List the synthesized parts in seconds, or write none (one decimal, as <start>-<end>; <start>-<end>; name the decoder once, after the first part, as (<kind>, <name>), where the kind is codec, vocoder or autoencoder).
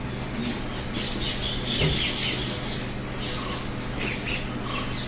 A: none